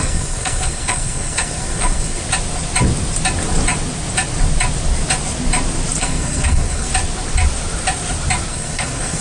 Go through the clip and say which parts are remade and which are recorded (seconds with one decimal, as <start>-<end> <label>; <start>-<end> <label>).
0.0-2.2 remade; 2.2-6.0 recorded; 6.0-6.9 remade; 6.9-8.5 recorded; 8.5-9.2 remade